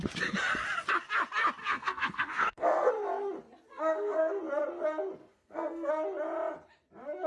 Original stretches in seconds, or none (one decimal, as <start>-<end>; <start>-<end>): 0.0-1.6; 2.9-3.7; 4.4-5.2; 5.9-7.3